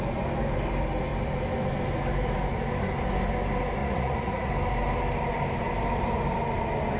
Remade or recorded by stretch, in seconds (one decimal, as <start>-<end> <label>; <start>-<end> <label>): 0.0-3.8 recorded; 3.8-4.5 remade; 4.5-7.0 recorded